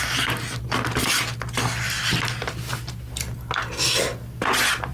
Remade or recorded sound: recorded